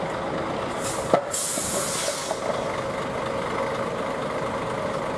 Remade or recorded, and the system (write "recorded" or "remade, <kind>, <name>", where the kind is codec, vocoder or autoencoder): recorded